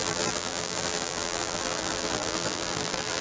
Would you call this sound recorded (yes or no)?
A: no